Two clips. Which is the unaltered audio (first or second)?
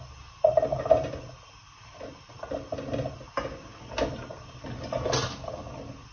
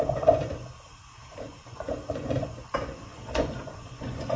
first